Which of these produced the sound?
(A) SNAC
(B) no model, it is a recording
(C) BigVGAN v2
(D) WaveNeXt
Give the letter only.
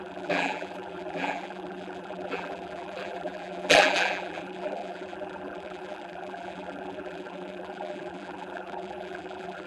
C